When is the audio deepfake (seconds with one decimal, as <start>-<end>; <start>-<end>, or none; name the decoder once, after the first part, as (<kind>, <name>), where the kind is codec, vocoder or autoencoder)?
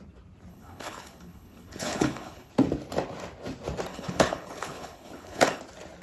0.5-2.5 (codec, HILCodec); 3.9-5.6